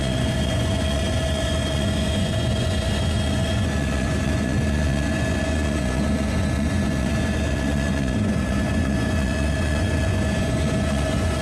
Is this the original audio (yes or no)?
no